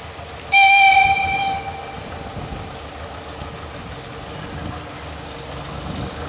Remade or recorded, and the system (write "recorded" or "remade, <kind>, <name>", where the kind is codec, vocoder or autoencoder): recorded